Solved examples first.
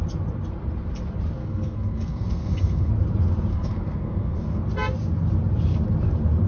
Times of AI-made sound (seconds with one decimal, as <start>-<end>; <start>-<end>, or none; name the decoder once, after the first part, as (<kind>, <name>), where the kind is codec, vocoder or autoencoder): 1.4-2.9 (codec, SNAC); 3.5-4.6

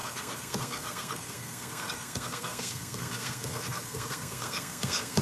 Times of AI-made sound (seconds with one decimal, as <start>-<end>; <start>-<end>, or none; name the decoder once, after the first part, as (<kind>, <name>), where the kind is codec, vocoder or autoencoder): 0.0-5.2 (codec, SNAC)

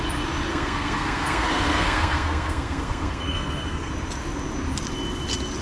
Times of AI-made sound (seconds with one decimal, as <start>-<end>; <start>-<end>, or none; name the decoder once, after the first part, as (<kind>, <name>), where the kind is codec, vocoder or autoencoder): 0.5-3.9 (codec, SNAC)